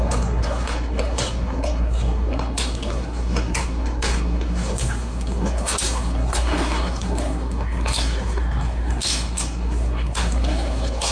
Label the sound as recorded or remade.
remade